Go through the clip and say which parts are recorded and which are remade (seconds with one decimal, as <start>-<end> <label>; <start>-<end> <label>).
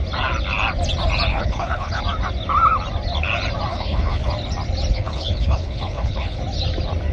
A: 0.0-1.3 recorded; 1.3-2.0 remade; 2.0-3.7 recorded; 3.7-4.3 remade; 4.3-4.9 recorded; 4.9-6.4 remade; 6.4-7.1 recorded